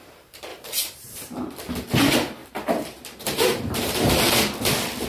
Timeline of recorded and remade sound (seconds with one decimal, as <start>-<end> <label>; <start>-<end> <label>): 0.0-0.5 recorded; 0.5-1.2 remade; 1.2-2.4 recorded; 2.4-4.3 remade; 4.3-5.1 recorded